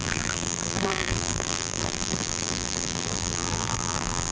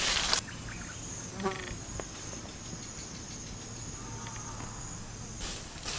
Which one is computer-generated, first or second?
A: first